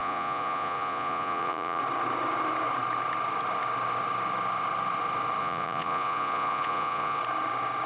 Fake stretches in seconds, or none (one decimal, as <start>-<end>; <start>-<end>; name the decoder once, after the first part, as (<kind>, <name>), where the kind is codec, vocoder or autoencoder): 0.0-1.8 (vocoder, Vocos); 5.4-7.2